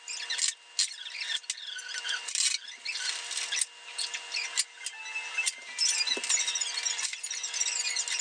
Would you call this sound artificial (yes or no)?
no